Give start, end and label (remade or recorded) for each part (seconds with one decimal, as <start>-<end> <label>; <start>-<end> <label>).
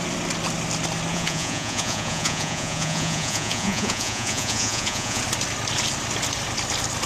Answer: 0.0-1.1 recorded; 1.1-5.2 remade; 5.2-7.1 recorded